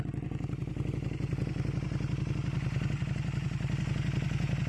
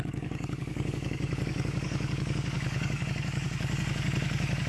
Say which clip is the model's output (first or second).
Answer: second